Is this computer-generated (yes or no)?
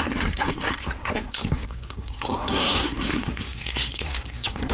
yes